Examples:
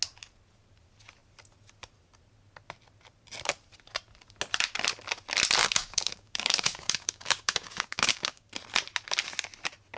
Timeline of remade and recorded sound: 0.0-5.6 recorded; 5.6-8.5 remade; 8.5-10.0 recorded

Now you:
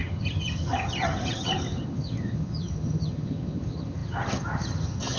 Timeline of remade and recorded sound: 0.0-5.2 remade

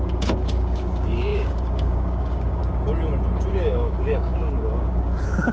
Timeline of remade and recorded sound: 0.0-2.6 remade; 2.6-3.5 recorded; 3.5-5.5 remade

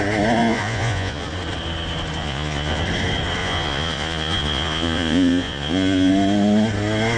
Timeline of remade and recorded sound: 0.0-0.4 recorded; 0.4-1.3 remade; 1.3-2.2 recorded; 2.2-2.8 remade; 2.8-3.4 recorded; 3.4-6.1 remade; 6.1-7.2 recorded